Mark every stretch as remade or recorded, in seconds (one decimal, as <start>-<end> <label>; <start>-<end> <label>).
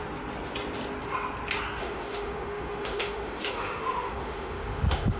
0.0-1.8 recorded; 1.8-5.2 remade